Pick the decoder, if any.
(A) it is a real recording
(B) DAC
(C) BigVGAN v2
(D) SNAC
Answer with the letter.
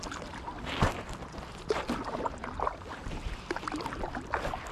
A